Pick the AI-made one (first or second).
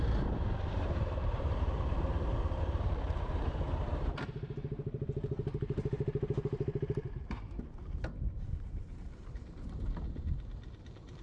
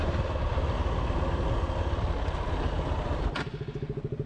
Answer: first